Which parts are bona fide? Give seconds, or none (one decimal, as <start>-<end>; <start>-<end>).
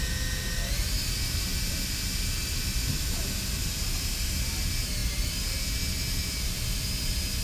0.0-7.4